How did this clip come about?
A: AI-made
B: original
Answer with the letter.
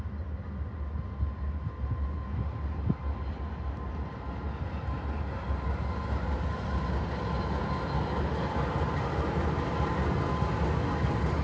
B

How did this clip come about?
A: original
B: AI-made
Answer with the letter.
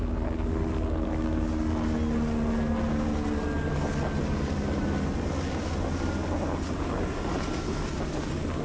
A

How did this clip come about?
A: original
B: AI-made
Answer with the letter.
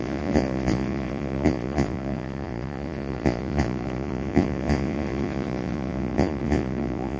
B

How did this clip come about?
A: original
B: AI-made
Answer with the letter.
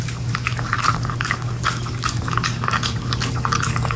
B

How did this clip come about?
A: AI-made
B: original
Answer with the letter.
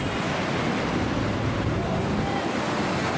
B